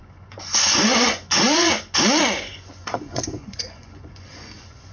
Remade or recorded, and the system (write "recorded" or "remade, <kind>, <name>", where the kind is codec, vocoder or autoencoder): remade, vocoder, Vocos